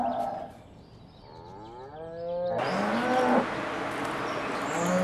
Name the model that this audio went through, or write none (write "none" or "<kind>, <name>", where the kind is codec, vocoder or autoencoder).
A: none